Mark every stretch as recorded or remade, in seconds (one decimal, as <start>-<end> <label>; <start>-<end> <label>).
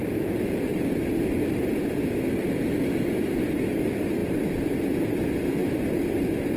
0.0-6.6 recorded